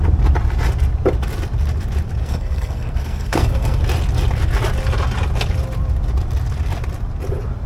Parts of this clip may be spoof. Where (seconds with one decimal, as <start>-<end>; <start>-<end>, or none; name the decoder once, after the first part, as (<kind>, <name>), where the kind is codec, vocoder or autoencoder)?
2.2-3.8 (codec, SNAC)